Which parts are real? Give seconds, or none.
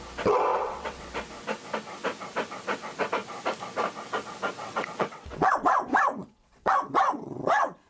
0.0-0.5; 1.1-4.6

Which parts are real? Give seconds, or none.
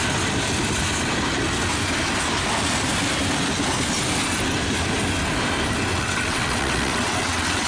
0.0-5.9